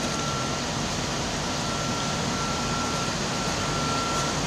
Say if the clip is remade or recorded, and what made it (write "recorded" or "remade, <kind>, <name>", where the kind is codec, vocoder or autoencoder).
recorded